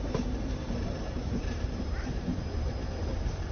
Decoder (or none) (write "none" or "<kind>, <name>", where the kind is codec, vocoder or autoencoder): vocoder, BigVGAN v2